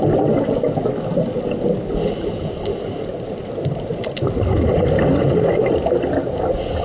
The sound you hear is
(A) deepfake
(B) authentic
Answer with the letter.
B